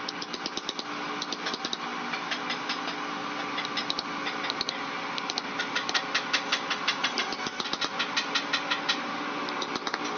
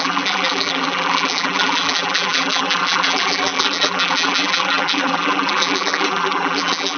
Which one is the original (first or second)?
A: first